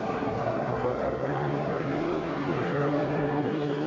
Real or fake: fake